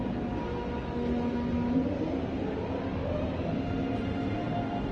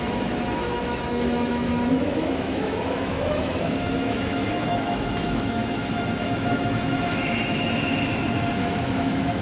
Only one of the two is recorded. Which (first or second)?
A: first